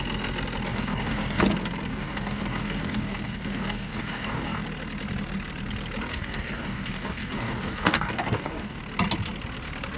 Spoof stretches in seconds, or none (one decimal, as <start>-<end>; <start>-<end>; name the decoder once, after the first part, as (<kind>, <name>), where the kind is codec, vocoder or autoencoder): 0.7-1.4 (codec, DAC); 1.9-4.6; 6.1-8.8